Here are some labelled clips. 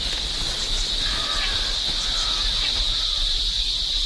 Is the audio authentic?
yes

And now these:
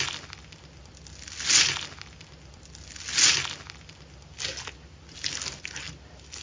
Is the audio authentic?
yes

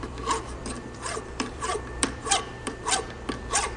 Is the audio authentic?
no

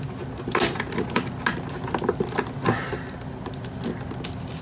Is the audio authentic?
yes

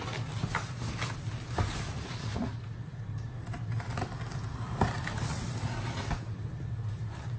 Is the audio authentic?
yes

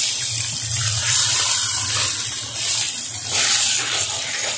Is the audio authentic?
yes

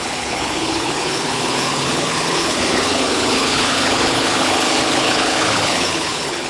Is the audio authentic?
no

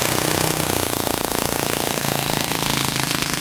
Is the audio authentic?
no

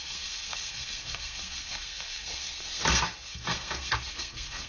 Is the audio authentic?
no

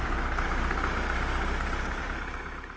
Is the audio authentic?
no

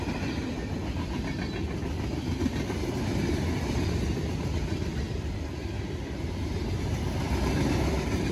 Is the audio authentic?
yes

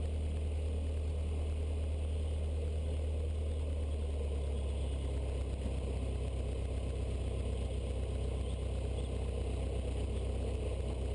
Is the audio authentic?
yes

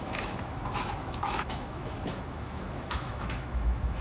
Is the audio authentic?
no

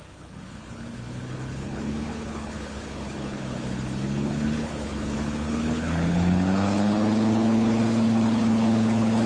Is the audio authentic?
no